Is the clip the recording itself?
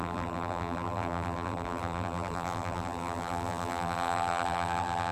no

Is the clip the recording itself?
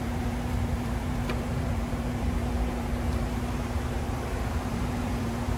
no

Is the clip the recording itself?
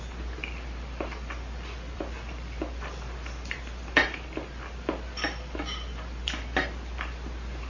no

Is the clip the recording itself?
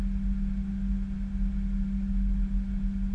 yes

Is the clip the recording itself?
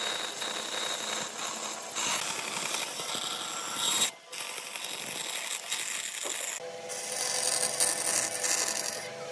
yes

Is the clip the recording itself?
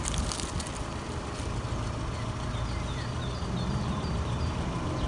yes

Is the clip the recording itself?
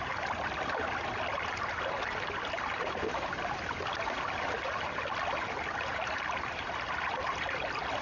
no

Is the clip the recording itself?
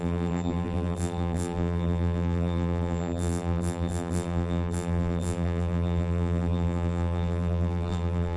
no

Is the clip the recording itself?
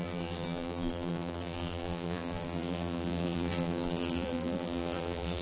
no